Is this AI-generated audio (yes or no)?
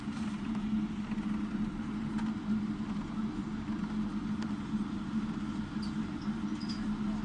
no